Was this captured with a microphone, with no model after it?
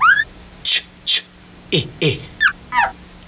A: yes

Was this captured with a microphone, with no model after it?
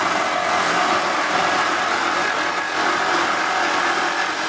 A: yes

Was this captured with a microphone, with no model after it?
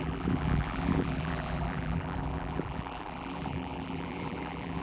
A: no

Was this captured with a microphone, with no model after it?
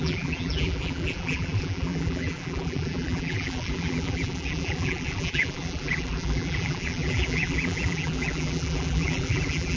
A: no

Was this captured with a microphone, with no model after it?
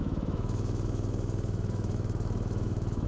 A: no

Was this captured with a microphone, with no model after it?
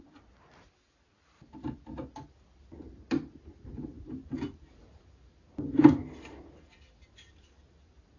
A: yes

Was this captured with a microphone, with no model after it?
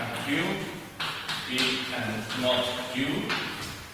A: yes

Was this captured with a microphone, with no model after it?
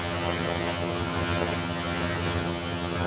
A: no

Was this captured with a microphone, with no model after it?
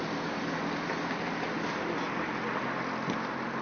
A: yes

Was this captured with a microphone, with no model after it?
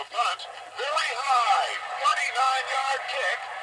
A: yes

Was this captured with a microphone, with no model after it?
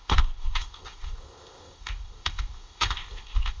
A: no